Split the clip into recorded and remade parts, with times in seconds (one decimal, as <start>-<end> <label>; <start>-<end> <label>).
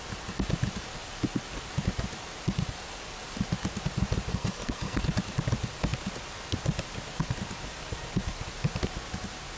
0.0-4.3 recorded; 4.3-5.0 remade; 5.0-9.6 recorded